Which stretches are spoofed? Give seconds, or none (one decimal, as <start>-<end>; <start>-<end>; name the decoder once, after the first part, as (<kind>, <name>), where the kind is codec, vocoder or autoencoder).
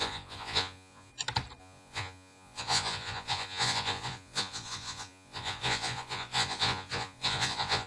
0.0-1.1 (vocoder, Vocos); 1.6-7.9